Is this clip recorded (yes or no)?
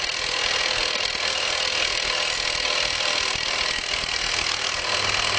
yes